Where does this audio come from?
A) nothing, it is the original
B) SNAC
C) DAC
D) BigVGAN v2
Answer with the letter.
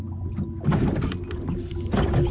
A